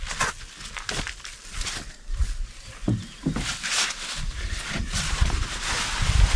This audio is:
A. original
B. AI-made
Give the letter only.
A